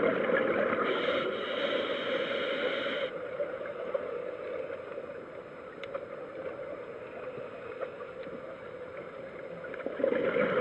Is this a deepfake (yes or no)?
no